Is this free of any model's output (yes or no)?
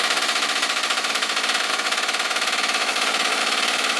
no